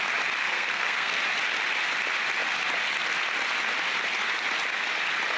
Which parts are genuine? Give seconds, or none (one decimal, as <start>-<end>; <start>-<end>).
0.0-0.4; 1.2-5.4